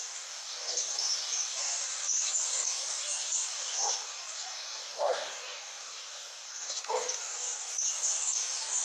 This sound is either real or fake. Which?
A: fake